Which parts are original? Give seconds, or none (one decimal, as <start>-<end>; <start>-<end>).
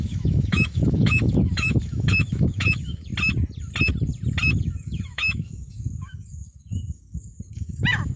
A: 3.1-4.6